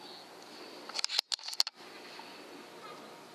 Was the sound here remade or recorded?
recorded